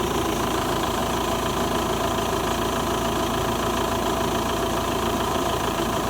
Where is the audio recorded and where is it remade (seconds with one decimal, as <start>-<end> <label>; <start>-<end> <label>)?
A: 0.0-1.0 remade; 1.0-4.6 recorded; 4.6-6.1 remade